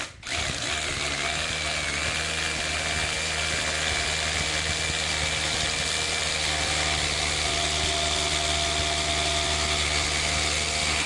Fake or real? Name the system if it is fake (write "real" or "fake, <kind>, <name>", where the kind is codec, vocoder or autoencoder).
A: real